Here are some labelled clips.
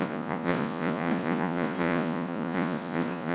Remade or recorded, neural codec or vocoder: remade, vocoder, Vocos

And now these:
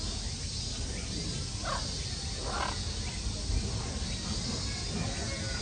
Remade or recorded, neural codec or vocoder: recorded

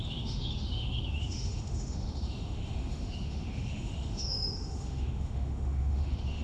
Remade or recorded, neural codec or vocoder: remade, autoencoder, DAC-VAE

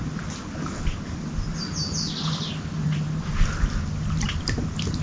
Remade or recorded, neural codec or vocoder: recorded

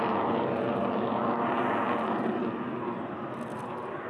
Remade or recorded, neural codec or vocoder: recorded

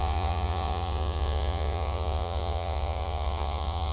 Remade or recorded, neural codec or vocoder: remade, vocoder, Vocos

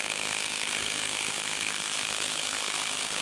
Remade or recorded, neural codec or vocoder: remade, codec, SNAC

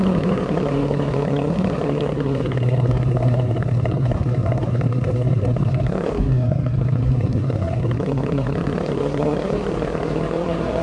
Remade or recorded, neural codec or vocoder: remade, codec, SNAC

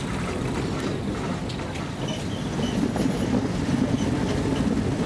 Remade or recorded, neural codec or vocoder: recorded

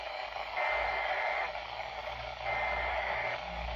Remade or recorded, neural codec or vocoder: remade, codec, DAC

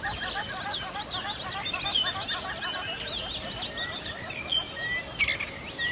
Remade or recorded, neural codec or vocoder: recorded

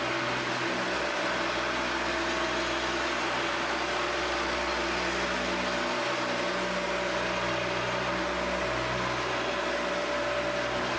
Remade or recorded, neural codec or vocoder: recorded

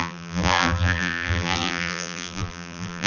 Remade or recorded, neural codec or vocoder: remade, vocoder, BigVGAN v2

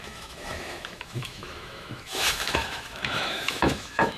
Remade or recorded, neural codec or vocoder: remade, autoencoder, DAC-VAE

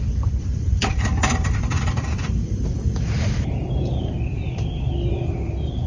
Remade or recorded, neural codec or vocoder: remade, vocoder, BigVGAN v2